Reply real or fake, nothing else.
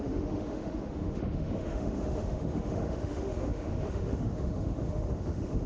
fake